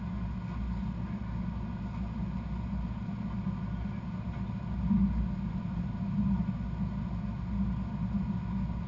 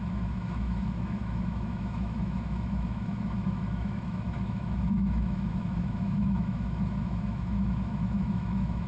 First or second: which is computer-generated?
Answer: second